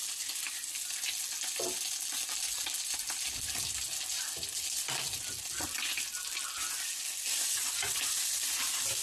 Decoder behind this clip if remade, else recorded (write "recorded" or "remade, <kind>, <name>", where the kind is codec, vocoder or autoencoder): recorded